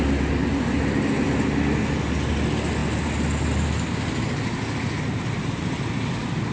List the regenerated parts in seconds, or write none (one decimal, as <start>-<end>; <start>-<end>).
none